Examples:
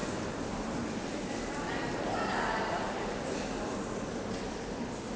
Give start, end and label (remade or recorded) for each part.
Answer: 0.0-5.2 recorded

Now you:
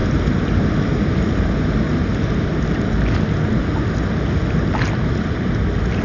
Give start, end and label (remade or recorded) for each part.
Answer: 0.0-6.0 recorded

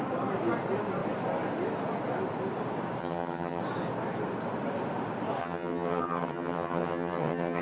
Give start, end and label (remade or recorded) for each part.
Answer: 0.0-3.0 recorded; 3.0-3.6 remade; 3.6-5.4 recorded; 5.4-7.6 remade

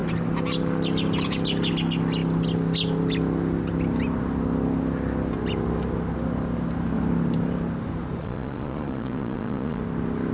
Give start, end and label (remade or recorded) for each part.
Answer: 0.0-8.2 recorded; 8.2-9.8 remade; 9.8-10.3 recorded

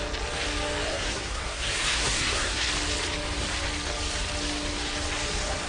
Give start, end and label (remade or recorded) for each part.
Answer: 0.0-0.9 recorded; 0.9-2.7 remade; 2.7-5.7 recorded